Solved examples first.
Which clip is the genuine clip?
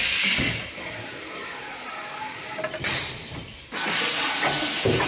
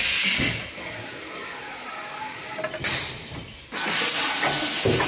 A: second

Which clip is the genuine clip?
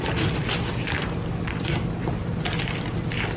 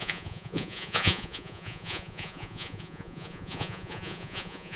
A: first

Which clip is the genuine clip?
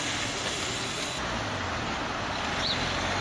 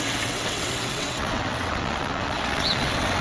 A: first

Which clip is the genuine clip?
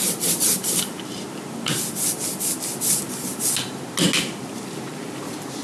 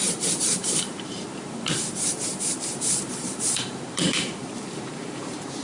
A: first